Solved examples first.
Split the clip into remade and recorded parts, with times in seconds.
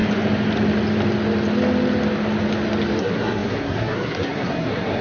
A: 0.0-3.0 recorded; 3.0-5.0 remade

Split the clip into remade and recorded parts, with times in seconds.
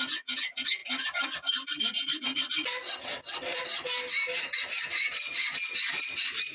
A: 0.0-6.5 recorded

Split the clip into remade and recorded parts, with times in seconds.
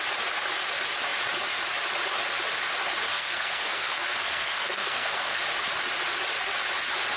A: 0.0-3.1 recorded; 3.1-5.4 remade; 5.4-7.2 recorded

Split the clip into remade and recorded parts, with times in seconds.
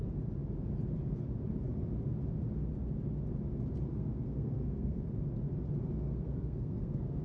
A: 0.0-3.9 recorded; 3.9-5.0 remade; 5.0-5.9 recorded; 5.9-7.2 remade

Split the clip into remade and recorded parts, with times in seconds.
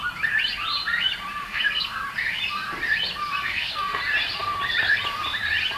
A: 0.0-1.4 recorded; 1.4-2.0 remade; 2.0-3.4 recorded; 3.4-4.0 remade; 4.0-5.8 recorded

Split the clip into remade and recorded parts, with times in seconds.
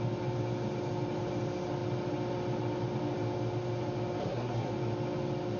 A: 0.0-4.2 recorded; 4.2-4.7 remade; 4.7-5.6 recorded